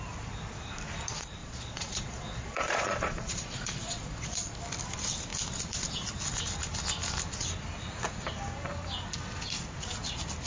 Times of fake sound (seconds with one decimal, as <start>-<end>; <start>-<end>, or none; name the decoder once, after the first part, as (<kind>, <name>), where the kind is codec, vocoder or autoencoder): 1.4-4.6 (vocoder, Vocos)